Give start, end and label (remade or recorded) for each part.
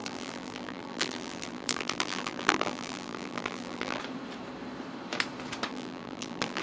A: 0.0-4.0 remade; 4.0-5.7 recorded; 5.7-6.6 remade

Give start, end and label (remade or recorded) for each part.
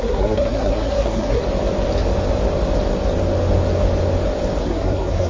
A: 0.0-1.4 remade; 1.4-4.6 recorded; 4.6-5.3 remade